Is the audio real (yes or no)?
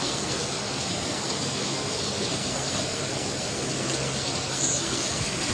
no